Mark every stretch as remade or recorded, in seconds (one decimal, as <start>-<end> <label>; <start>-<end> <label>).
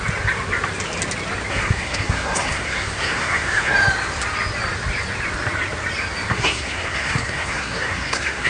0.0-1.5 recorded; 1.5-3.7 remade; 3.7-6.3 recorded; 6.3-8.5 remade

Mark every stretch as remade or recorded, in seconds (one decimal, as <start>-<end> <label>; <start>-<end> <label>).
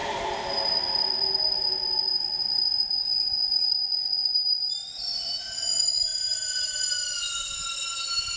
0.0-3.1 remade; 3.1-6.1 recorded; 6.1-7.3 remade; 7.3-8.4 recorded